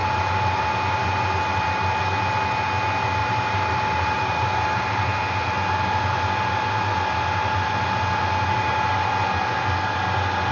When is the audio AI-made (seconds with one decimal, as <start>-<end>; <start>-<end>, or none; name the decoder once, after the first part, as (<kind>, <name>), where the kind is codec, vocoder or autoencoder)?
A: 0.0-0.7 (vocoder, BigVGAN v2); 3.2-5.0

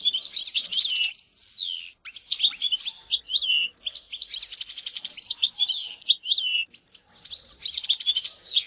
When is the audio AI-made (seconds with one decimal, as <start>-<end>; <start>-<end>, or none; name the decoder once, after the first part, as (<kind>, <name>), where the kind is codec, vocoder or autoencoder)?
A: 4.9-6.4 (vocoder, BigVGAN v2)

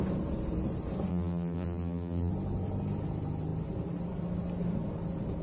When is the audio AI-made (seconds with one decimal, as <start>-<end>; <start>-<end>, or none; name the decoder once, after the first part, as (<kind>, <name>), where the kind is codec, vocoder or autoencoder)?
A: 1.1-2.3 (vocoder, BigVGAN v2)

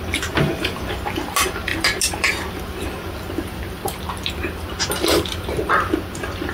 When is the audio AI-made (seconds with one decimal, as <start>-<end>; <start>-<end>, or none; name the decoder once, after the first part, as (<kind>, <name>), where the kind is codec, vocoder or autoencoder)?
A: none

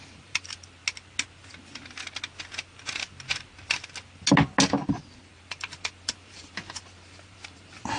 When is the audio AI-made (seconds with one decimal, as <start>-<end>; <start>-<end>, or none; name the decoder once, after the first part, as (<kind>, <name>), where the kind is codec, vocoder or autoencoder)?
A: 0.0-0.8 (vocoder, BigVGAN v2); 5.3-8.0

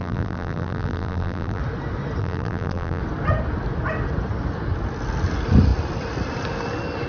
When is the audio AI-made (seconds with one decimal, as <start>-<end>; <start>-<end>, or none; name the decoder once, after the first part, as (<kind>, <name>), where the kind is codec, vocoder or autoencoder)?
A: 0.0-1.6 (vocoder, BigVGAN v2); 2.2-3.0